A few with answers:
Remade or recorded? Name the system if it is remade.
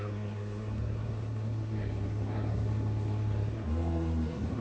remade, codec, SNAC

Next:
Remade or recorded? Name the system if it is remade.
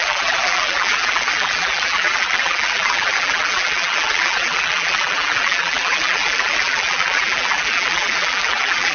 remade, vocoder, BigVGAN v2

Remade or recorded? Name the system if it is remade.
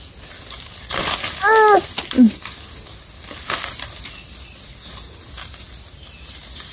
recorded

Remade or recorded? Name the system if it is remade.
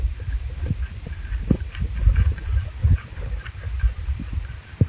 remade, vocoder, BigVGAN v2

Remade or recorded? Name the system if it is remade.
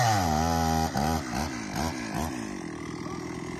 recorded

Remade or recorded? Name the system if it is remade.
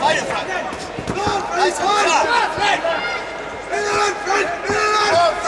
recorded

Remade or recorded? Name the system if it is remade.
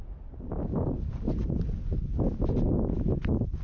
recorded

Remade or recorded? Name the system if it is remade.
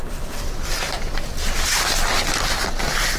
recorded